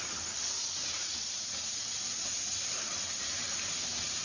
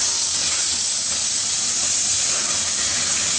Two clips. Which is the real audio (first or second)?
second